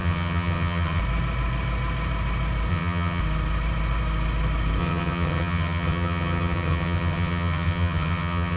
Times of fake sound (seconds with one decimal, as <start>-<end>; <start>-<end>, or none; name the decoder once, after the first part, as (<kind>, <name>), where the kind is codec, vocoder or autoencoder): 0.0-1.0 (vocoder, HiFi-GAN); 2.7-3.2; 4.8-8.6